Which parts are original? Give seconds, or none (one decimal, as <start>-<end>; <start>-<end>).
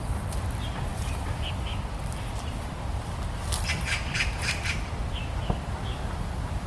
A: 0.0-0.9; 4.9-6.7